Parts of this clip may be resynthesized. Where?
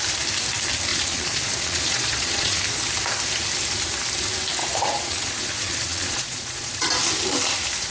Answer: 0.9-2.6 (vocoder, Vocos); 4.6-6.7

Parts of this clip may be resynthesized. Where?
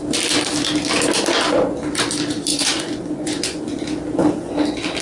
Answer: 2.5-3.6 (vocoder, Vocos)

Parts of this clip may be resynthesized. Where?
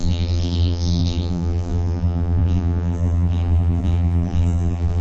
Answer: 0.0-5.0 (vocoder, BigVGAN v2)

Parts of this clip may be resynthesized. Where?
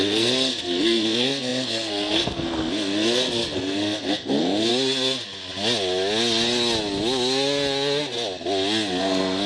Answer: 0.0-4.7 (codec, SNAC); 9.0-9.5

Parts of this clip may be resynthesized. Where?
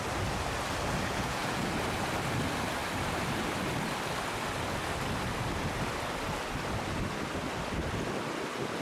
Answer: 1.0-1.7 (vocoder, Vocos)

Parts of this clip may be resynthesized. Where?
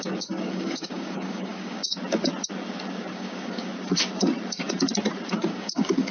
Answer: 0.0-1.8 (codec, DAC); 3.1-3.7; 5.3-6.1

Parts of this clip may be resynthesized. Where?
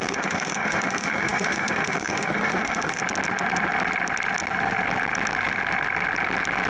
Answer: 0.0-3.0 (autoencoder, DAC-VAE)